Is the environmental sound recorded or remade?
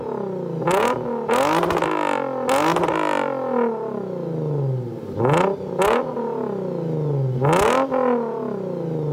recorded